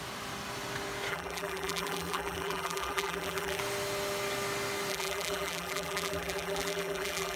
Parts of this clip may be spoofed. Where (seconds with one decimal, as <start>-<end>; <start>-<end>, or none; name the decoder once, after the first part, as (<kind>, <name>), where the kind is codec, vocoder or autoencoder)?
1.1-3.6 (vocoder, BigVGAN v2); 4.9-7.4